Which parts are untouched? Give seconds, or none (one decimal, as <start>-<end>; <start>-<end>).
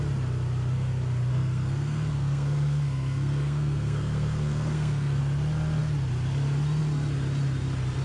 0.0-1.3; 5.2-8.0